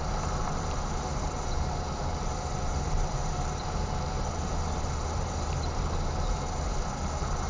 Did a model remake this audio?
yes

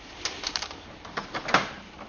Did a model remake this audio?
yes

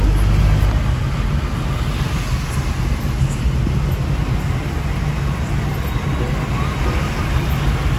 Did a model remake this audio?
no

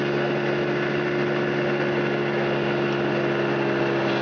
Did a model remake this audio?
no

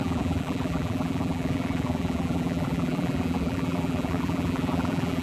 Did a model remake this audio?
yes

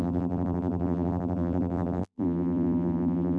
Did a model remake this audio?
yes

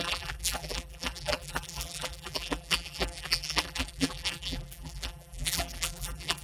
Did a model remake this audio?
yes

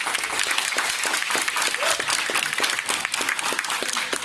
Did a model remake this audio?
no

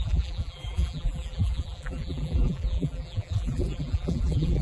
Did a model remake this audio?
yes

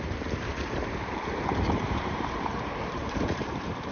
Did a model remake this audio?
yes